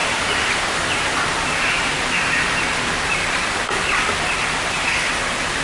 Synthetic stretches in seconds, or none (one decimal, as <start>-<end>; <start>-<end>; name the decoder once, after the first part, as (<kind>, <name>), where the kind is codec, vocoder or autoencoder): none